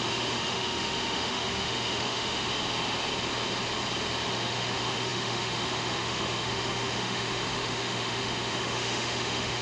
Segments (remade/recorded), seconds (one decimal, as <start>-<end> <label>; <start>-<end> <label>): 0.0-2.5 remade; 2.5-4.3 recorded; 4.3-9.6 remade